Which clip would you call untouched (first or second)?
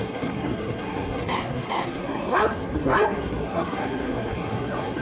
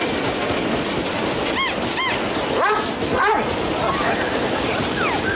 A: second